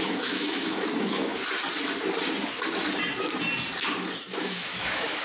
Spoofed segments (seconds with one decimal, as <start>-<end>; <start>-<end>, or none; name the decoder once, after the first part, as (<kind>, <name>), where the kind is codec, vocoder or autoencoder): 0.0-1.3 (autoencoder, DAC-VAE); 4.4-5.2